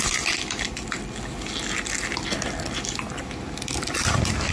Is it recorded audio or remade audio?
recorded